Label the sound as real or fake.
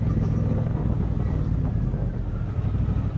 real